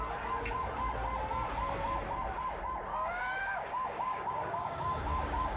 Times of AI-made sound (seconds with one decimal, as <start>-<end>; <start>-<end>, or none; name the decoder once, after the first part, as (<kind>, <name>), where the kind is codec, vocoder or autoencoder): 2.9-5.6 (codec, DAC)